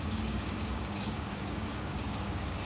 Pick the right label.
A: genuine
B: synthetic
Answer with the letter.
B